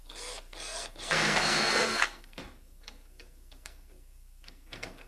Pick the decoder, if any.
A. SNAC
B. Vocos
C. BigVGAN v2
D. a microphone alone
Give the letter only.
A